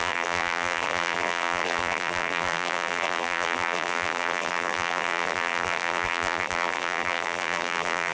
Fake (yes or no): yes